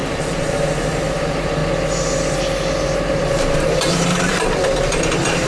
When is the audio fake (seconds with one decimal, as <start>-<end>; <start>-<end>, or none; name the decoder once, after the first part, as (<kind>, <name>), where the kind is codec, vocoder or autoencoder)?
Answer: 0.0-1.6 (vocoder, BigVGAN v2); 3.1-5.5